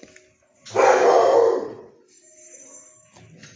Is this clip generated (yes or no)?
no